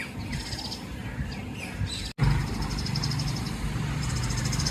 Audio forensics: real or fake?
real